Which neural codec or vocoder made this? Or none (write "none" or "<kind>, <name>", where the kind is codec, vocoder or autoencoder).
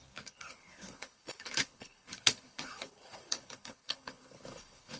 codec, HILCodec